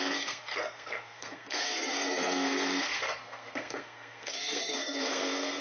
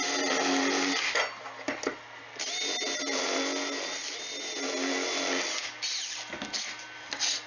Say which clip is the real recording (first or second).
second